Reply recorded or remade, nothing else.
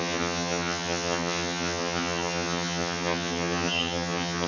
remade